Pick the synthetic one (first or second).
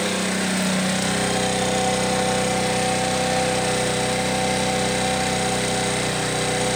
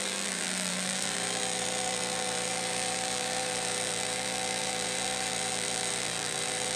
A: second